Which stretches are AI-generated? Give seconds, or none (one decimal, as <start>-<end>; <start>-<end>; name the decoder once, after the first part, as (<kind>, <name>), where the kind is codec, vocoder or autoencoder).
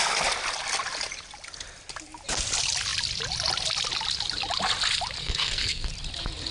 5.2-5.9 (codec, SNAC)